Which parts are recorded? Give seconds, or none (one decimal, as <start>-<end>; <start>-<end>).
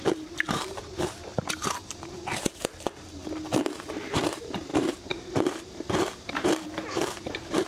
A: 3.2-3.7